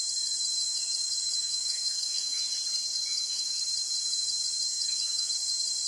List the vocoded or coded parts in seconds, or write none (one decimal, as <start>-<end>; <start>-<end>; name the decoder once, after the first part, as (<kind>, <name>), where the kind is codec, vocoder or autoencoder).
1.4-2.4 (autoencoder, DAC-VAE); 3.1-3.6; 4.7-5.3